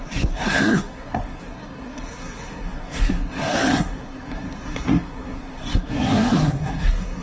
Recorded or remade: remade